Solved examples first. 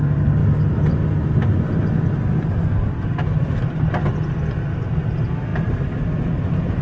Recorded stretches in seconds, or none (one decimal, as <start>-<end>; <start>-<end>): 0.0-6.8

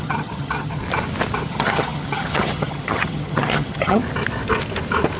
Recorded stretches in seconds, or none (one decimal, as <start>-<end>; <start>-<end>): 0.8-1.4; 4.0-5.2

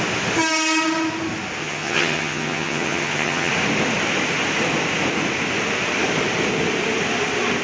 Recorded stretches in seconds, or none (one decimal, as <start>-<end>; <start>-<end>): 0.0-1.6; 3.5-7.6

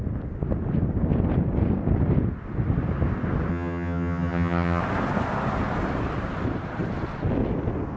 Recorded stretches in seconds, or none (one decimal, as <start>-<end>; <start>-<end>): 0.0-3.5; 4.8-8.0